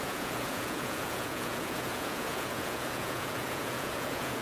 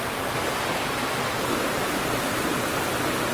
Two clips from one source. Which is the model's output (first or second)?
first